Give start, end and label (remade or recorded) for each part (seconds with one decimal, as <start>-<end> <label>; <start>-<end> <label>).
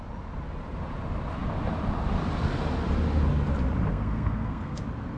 0.0-3.9 recorded; 3.9-4.8 remade; 4.8-5.2 recorded